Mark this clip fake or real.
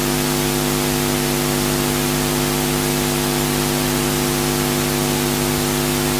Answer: real